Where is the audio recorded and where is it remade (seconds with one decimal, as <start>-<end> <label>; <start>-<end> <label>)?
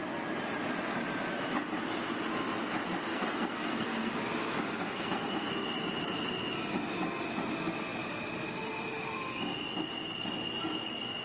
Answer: 0.0-3.1 recorded; 3.1-4.1 remade; 4.1-4.9 recorded; 4.9-5.4 remade; 5.4-11.2 recorded